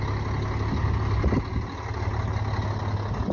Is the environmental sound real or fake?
real